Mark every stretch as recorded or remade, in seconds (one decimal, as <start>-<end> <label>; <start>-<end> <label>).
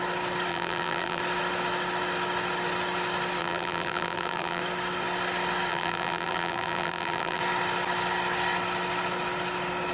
0.0-0.5 recorded; 0.5-1.2 remade; 1.2-3.4 recorded; 3.4-4.6 remade; 4.6-5.7 recorded; 5.7-7.4 remade; 7.4-9.9 recorded